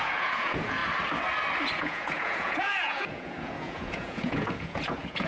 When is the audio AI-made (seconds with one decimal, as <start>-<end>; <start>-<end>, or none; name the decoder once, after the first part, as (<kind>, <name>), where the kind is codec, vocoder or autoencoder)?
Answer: 0.0-0.8 (vocoder, Vocos); 1.8-5.3